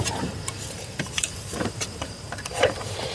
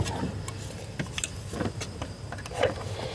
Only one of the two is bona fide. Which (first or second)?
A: second